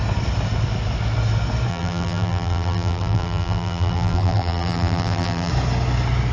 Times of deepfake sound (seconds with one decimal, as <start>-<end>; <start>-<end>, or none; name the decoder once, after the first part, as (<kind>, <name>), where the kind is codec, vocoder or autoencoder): 1.7-5.5 (vocoder, BigVGAN v2)